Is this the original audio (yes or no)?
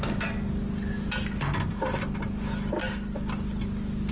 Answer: yes